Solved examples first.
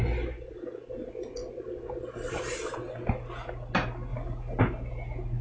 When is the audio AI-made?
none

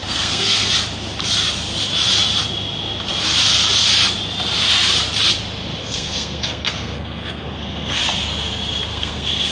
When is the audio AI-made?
0.0-0.7 (codec, SNAC); 5.8-8.0; 8.9-9.5

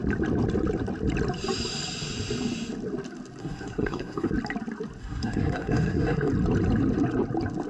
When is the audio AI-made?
3.4-4.3 (codec, SNAC); 5.0-6.3

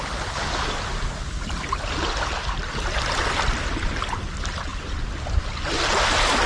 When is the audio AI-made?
none

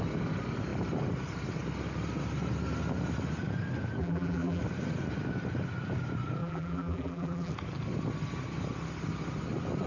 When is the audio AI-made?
4.0-4.6 (vocoder, BigVGAN v2); 6.4-7.5

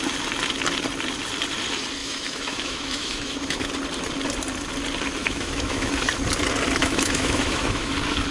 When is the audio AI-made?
2.0-3.7 (autoencoder, DAC-VAE); 5.2-5.9; 6.8-7.9

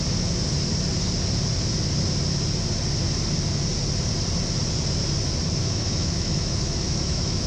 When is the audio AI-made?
5.6-7.5 (autoencoder, DAC-VAE)

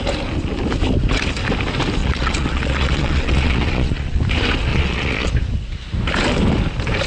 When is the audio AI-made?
2.0-4.2 (vocoder, Vocos); 4.7-5.3